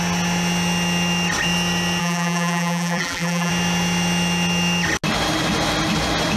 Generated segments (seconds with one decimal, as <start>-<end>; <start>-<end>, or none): 2.0-3.5